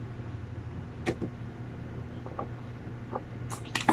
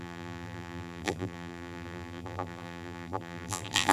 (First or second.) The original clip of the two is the first